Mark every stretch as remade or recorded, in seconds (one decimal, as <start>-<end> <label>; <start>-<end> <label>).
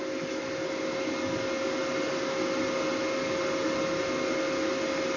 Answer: 0.0-5.2 recorded